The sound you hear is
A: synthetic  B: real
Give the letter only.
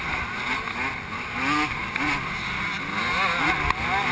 B